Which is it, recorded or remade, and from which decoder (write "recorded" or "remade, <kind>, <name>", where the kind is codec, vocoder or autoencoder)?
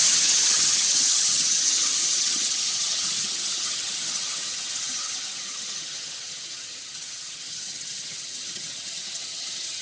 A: remade, vocoder, HiFi-GAN